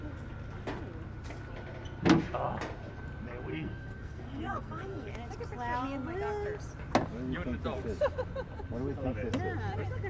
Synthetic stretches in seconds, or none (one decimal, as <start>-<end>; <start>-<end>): 3.5-5.1